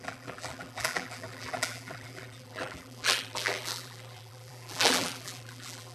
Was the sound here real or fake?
fake